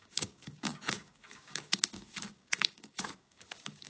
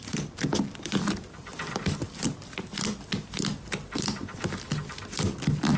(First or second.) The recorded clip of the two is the second